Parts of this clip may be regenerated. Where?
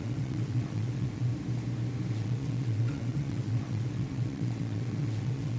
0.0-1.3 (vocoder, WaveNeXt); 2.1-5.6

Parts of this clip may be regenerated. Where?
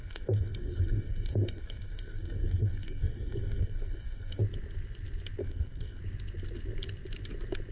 0.0-4.4 (codec, SNAC); 5.4-6.0